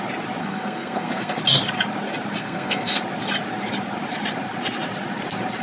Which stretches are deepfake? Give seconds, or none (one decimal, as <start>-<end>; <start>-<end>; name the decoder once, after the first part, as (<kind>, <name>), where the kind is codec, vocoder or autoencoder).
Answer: 0.4-1.4 (codec, SNAC); 2.4-3.0